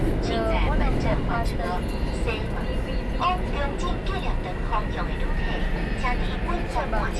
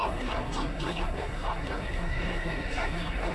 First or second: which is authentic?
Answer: first